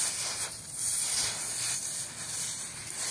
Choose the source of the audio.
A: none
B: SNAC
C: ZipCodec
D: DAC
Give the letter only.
A